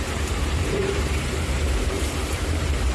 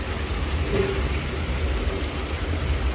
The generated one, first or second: first